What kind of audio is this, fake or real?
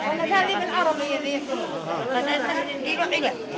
real